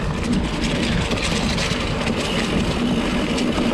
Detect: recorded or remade recorded